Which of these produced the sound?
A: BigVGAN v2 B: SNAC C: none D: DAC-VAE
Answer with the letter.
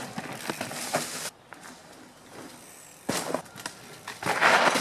C